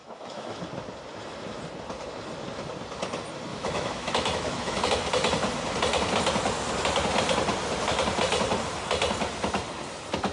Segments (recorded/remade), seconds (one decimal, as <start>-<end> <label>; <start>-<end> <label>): 0.0-0.6 remade; 0.6-3.5 recorded; 3.5-4.9 remade; 4.9-10.3 recorded